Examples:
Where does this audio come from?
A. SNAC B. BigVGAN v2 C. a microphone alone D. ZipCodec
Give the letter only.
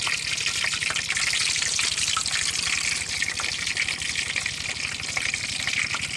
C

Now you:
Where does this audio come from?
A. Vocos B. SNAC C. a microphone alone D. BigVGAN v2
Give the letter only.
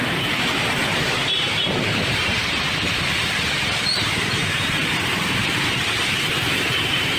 D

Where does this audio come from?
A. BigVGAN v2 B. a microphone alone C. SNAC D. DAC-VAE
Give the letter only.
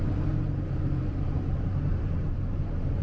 A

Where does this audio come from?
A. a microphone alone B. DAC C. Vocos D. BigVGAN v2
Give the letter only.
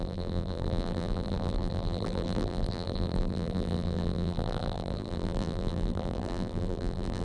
D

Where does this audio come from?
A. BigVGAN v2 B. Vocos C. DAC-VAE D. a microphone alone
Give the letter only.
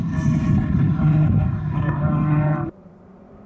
A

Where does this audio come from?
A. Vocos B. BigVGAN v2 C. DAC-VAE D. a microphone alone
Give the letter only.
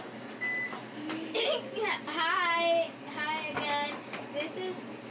D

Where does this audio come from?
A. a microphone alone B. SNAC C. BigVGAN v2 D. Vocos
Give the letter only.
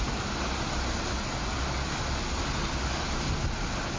A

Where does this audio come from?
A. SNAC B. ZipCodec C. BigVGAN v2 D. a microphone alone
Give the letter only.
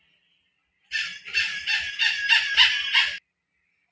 C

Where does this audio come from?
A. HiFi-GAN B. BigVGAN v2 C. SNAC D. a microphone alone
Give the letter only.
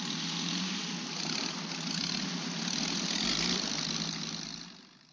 D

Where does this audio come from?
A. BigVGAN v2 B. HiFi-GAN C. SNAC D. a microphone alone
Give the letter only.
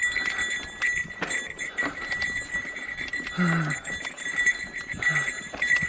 D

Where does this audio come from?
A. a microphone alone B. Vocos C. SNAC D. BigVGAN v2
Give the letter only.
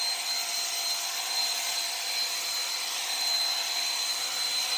A